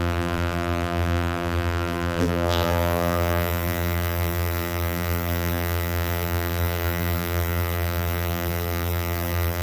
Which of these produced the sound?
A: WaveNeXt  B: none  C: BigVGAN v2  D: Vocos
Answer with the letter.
C